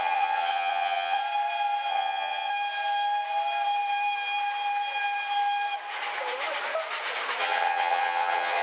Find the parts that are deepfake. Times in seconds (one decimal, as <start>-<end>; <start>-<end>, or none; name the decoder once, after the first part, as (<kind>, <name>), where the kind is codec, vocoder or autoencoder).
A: 0.0-1.2 (vocoder, HiFi-GAN); 1.9-2.5; 7.4-8.6